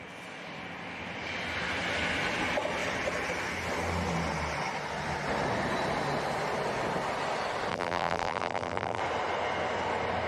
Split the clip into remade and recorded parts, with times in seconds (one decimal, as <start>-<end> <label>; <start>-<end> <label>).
0.0-7.7 recorded; 7.7-9.0 remade; 9.0-10.3 recorded